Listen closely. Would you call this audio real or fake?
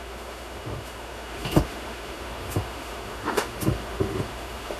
fake